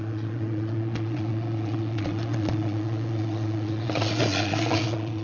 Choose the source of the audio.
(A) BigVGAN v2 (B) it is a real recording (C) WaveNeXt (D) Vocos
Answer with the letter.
D